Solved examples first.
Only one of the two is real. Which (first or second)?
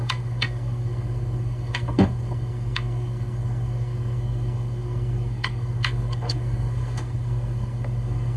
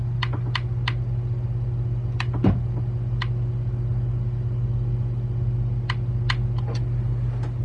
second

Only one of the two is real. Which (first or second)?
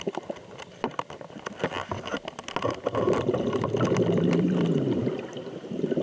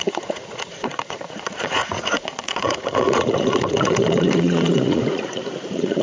first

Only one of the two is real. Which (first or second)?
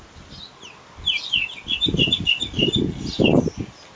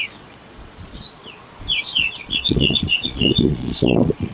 first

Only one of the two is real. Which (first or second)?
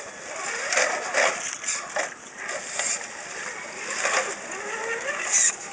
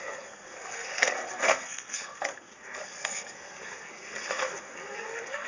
first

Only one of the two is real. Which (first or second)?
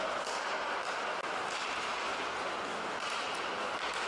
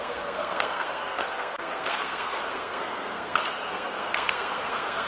first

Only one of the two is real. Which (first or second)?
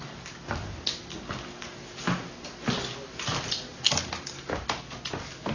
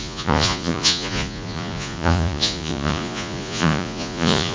first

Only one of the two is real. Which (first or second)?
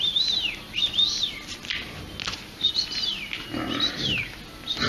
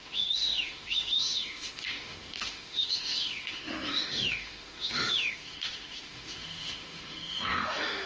first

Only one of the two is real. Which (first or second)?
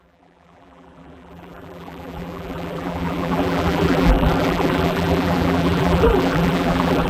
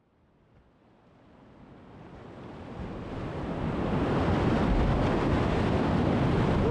second